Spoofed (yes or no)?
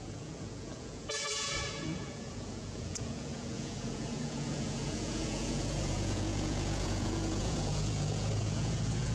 yes